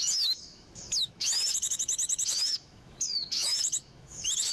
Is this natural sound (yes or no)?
no